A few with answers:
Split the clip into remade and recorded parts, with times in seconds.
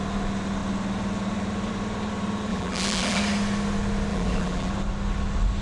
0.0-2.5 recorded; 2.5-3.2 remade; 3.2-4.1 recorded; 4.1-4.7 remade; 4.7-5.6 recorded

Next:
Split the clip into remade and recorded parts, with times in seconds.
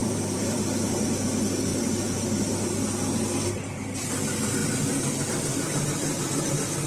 0.0-1.1 remade; 1.1-6.9 recorded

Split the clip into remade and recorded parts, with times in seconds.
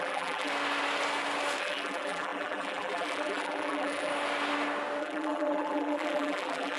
0.0-0.5 remade; 0.5-1.6 recorded; 1.6-4.1 remade; 4.1-5.0 recorded; 5.0-6.8 remade